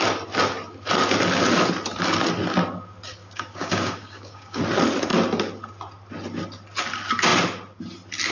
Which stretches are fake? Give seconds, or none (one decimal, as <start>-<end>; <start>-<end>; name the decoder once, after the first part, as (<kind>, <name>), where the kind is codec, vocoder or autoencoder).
3.2-4.6 (codec, DAC)